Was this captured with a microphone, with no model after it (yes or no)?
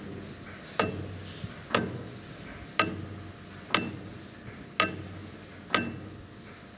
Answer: yes